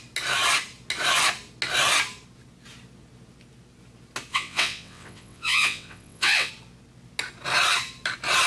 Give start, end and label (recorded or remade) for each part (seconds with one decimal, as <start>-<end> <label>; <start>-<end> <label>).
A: 0.0-4.3 recorded; 4.3-6.5 remade; 6.5-8.5 recorded